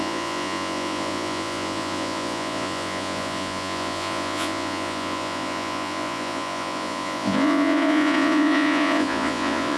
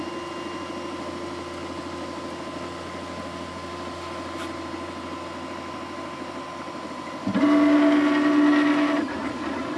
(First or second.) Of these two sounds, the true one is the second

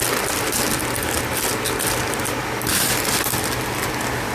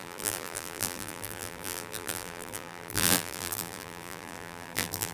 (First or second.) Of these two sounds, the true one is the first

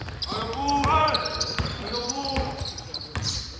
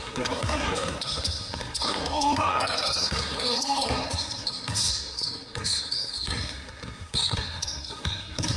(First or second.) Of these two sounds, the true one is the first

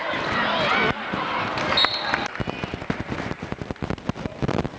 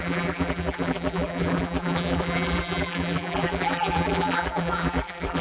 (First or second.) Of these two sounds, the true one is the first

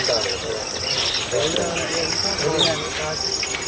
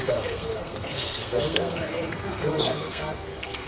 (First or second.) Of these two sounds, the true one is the first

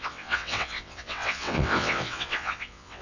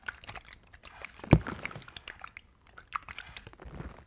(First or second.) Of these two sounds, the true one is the second